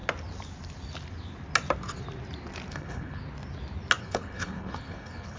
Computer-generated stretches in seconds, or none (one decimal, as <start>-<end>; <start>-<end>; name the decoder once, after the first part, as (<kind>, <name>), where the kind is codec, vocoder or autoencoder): 2.7-3.2 (codec, HILCodec); 4.0-5.4